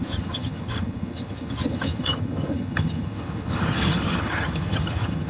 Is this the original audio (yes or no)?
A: no